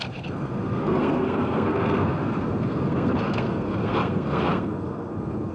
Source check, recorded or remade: remade